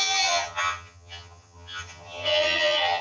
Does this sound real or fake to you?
fake